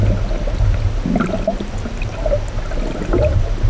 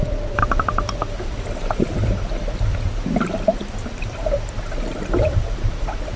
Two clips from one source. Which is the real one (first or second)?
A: first